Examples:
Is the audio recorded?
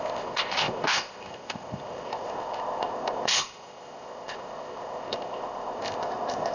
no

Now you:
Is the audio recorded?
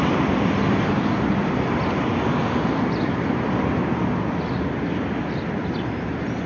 yes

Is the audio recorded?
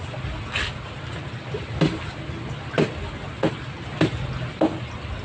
yes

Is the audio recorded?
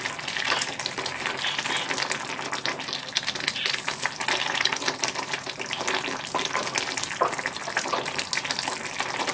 yes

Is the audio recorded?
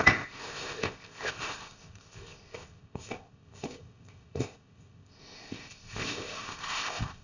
no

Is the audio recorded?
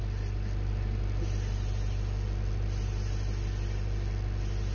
yes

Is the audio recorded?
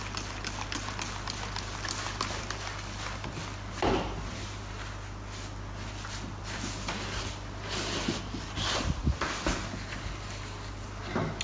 yes